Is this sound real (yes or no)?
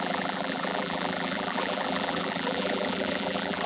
no